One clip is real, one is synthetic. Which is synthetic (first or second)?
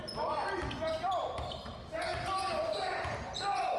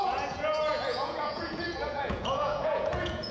second